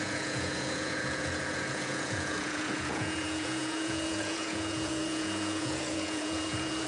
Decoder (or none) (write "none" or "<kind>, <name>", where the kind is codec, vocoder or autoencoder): vocoder, Vocos